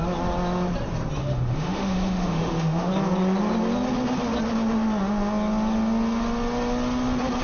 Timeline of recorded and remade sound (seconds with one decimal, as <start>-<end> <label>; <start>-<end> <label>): 0.0-1.2 recorded; 1.2-2.9 remade; 2.9-7.4 recorded